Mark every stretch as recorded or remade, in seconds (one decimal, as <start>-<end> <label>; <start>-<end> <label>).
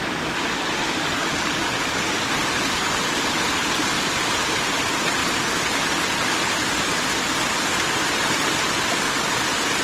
0.0-9.8 recorded